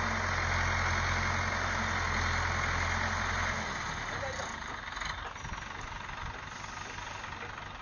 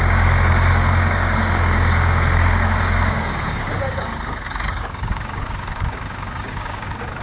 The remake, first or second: second